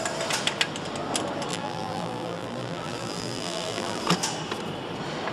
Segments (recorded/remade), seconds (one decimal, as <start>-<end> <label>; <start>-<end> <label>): 0.0-1.5 recorded; 1.5-4.0 remade; 4.0-5.3 recorded